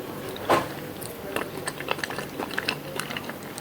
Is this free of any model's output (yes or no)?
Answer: no